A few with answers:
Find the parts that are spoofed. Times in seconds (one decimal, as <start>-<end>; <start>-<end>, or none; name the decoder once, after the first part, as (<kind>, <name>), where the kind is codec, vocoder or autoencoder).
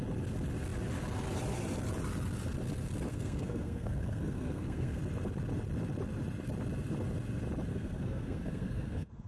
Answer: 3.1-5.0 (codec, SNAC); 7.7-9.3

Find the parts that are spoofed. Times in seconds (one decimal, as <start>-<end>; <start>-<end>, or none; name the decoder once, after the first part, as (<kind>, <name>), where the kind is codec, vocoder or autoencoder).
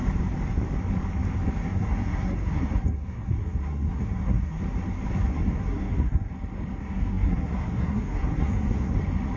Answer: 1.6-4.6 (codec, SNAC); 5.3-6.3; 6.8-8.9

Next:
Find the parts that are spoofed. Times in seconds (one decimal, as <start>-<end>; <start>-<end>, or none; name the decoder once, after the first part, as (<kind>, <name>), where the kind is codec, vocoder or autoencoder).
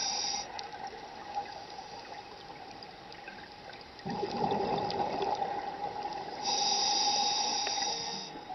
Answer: 7.9-8.5 (codec, SNAC)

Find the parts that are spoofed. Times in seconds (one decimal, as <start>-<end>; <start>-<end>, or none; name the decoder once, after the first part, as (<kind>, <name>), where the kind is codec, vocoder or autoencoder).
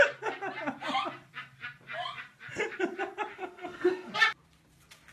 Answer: 3.3-4.1 (autoencoder, DAC-VAE)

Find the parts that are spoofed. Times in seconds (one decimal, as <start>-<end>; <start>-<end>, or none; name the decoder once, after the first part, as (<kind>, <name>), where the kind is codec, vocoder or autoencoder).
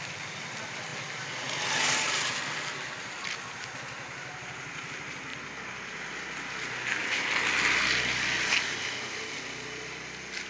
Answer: none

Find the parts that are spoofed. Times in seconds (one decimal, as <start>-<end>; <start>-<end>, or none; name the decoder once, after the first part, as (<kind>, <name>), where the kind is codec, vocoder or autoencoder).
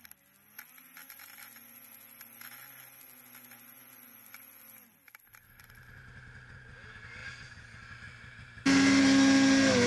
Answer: none